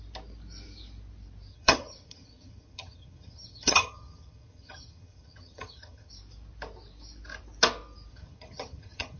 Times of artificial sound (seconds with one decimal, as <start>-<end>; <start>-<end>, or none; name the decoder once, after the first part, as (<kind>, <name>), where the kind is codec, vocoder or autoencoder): 1.5-6.1 (vocoder, HiFi-GAN); 8.1-9.2